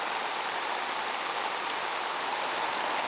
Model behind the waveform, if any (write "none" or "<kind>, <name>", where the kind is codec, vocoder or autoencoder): none